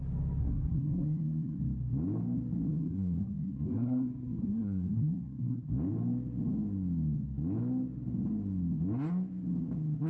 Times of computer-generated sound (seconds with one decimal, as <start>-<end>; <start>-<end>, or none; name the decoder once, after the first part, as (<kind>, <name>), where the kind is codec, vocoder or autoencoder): 0.4-1.6 (codec, SNAC); 2.7-5.7